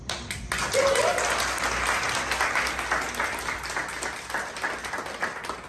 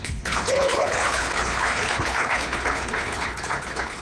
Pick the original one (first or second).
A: first